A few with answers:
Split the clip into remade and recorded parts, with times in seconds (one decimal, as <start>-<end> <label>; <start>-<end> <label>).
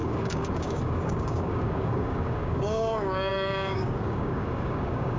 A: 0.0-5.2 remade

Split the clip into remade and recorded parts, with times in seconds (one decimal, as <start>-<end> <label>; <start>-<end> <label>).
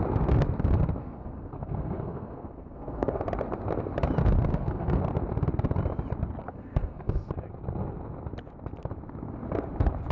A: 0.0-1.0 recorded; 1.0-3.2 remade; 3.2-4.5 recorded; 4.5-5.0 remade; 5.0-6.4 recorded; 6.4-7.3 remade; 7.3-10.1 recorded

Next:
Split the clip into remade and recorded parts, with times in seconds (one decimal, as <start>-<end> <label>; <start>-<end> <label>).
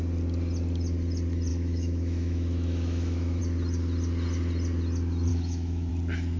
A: 0.0-1.5 recorded; 1.5-3.4 remade; 3.4-5.3 recorded; 5.3-5.9 remade; 5.9-6.4 recorded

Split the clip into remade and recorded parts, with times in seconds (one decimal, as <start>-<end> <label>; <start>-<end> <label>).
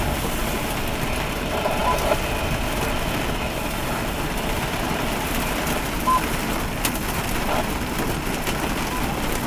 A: 0.0-1.8 recorded; 1.8-6.5 remade; 6.5-9.5 recorded